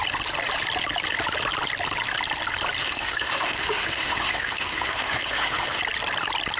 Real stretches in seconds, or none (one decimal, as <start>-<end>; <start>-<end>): 0.0-2.8; 5.8-6.6